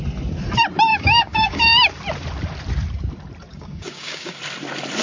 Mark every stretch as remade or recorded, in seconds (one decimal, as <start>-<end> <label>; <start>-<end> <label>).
0.0-0.9 recorded; 0.9-1.8 remade; 1.8-3.5 recorded; 3.5-4.4 remade; 4.4-5.0 recorded